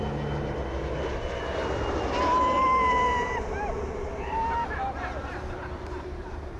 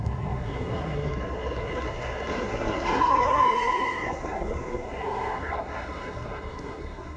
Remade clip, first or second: second